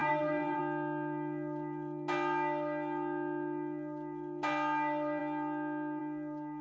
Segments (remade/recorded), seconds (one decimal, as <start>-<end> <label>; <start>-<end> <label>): 0.0-0.6 remade; 0.6-6.6 recorded